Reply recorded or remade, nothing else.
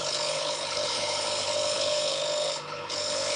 remade